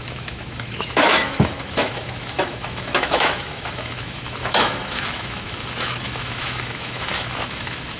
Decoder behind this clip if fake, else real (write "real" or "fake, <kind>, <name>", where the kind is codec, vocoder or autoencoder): fake, autoencoder, DAC-VAE